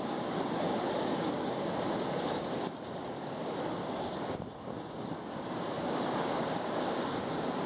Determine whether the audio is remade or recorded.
remade